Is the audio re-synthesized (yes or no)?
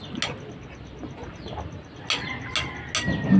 no